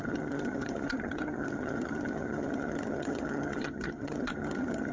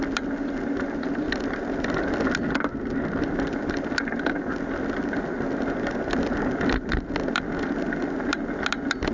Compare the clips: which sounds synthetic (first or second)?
first